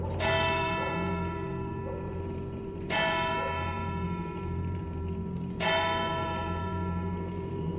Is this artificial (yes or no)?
yes